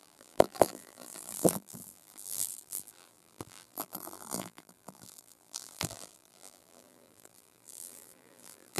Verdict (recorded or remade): remade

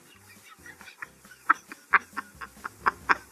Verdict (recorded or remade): recorded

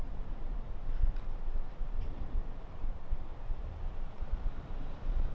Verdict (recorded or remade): remade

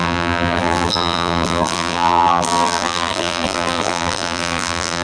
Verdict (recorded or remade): remade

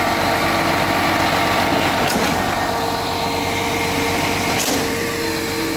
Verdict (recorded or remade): recorded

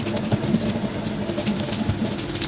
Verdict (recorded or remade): recorded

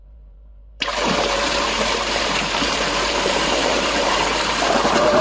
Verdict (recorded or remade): remade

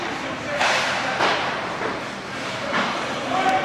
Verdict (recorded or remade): remade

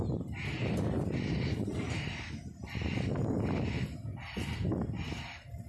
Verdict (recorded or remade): recorded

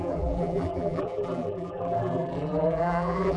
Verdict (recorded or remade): remade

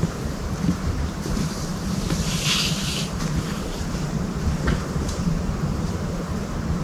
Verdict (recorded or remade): remade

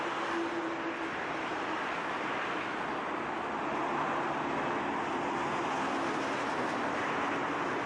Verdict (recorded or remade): recorded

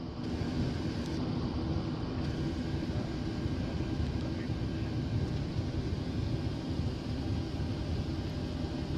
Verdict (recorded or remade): recorded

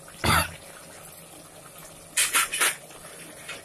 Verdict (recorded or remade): recorded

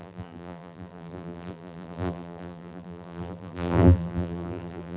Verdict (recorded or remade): remade